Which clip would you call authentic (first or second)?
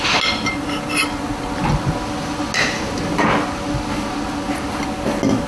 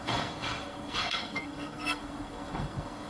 first